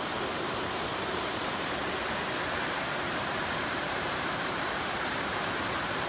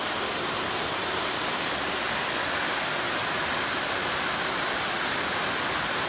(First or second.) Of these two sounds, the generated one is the first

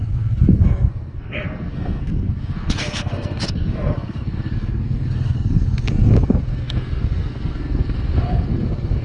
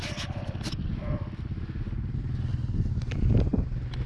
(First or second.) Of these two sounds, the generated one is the first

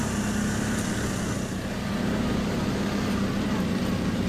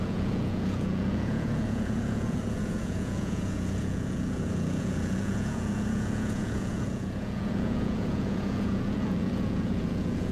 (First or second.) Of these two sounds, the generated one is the second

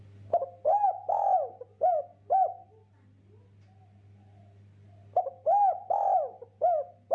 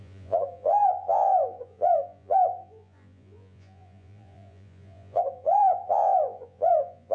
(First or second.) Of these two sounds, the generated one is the second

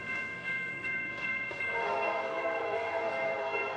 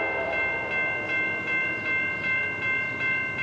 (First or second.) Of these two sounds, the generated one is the first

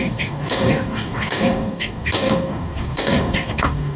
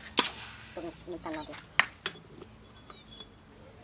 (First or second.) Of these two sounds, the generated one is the first